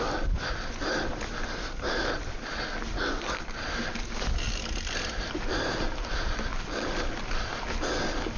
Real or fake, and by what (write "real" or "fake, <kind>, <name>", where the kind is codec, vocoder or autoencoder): real